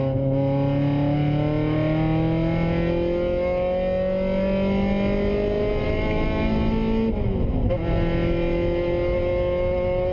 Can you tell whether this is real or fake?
real